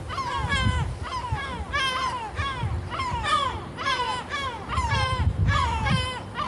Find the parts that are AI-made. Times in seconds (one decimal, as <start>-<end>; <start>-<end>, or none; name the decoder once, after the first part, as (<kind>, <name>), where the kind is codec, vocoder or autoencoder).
2.6-5.9 (vocoder, BigVGAN v2)